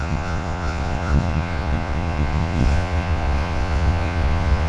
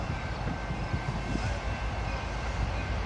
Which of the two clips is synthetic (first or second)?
first